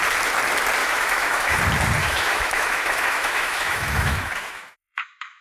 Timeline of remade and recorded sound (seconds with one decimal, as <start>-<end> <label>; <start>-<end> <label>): 0.0-0.8 recorded; 0.8-1.6 remade; 1.6-2.0 recorded; 2.0-5.4 remade